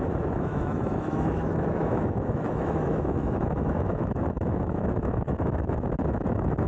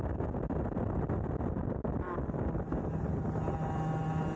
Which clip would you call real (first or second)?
second